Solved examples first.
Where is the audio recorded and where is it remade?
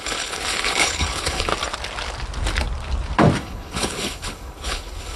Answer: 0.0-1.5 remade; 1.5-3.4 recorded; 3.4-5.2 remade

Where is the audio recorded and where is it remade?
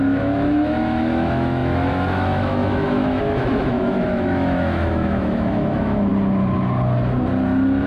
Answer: 0.0-6.1 remade; 6.1-7.9 recorded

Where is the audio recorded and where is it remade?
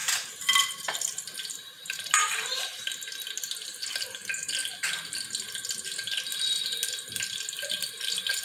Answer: 0.0-2.8 remade; 2.8-8.4 recorded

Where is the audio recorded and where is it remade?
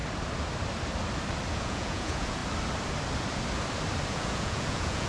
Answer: 0.0-1.5 recorded; 1.5-2.4 remade; 2.4-4.1 recorded; 4.1-5.1 remade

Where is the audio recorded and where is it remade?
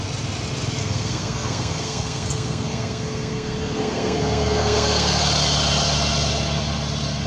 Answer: 0.0-0.8 recorded; 0.8-5.2 remade; 5.2-7.3 recorded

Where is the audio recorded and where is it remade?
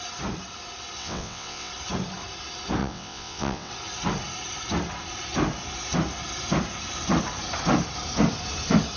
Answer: 0.0-1.0 recorded; 1.0-1.7 remade; 1.7-2.8 recorded; 2.8-3.7 remade; 3.7-9.0 recorded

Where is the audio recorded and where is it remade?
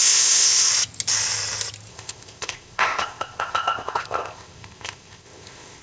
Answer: 0.0-0.7 remade; 0.7-1.9 recorded; 1.9-5.8 remade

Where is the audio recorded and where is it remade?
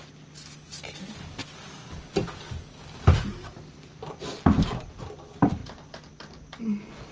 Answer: 0.0-7.1 recorded